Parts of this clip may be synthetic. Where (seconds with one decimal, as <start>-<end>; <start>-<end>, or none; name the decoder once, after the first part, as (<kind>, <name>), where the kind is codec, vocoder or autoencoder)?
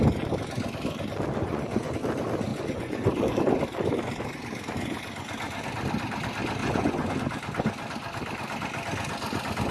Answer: 1.4-1.9 (vocoder, Vocos); 2.5-3.4; 6.6-7.2